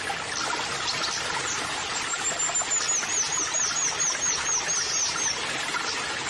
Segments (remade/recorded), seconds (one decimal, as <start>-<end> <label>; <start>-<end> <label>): 0.0-3.1 recorded; 3.1-4.6 remade; 4.6-6.3 recorded